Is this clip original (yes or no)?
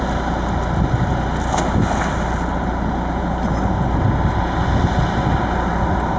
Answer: yes